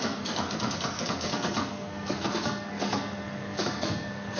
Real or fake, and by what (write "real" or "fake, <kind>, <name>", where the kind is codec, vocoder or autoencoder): fake, codec, SNAC